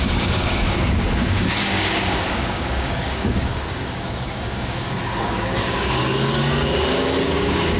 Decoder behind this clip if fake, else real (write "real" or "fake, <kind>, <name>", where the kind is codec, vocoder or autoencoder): fake, codec, DAC